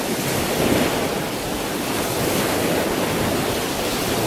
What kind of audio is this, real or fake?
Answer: real